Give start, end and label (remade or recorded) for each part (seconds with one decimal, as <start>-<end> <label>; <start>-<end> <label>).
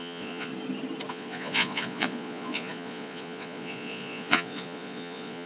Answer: 0.0-0.5 remade; 0.5-1.1 recorded; 1.1-5.5 remade